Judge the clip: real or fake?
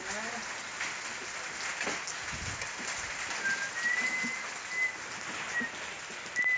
real